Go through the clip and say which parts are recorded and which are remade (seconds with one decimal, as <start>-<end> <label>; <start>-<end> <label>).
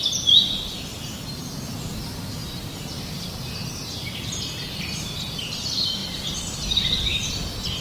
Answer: 0.0-3.6 recorded; 3.6-4.8 remade; 4.8-7.8 recorded